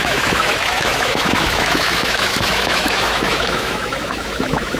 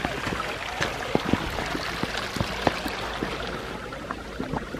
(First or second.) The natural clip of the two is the second